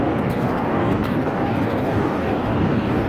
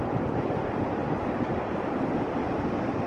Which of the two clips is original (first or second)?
second